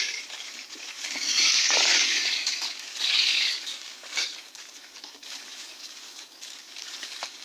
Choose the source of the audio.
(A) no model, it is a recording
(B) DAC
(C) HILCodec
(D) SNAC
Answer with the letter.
B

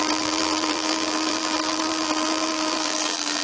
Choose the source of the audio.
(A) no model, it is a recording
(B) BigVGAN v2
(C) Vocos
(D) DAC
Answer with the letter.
B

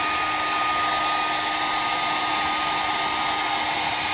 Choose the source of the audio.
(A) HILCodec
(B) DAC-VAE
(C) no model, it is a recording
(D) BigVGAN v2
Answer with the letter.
C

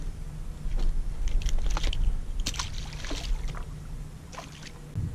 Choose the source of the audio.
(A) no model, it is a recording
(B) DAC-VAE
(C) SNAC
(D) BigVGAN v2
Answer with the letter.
A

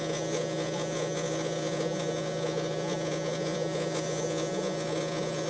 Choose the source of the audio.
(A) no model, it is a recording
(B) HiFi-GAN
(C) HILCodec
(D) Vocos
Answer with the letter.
D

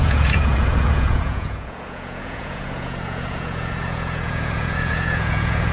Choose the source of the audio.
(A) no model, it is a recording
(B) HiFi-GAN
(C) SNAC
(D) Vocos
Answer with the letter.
D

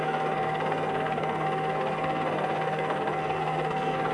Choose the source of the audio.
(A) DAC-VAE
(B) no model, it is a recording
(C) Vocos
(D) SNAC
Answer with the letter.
D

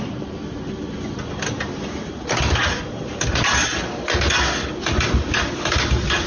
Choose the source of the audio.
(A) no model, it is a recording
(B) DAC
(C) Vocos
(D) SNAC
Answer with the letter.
A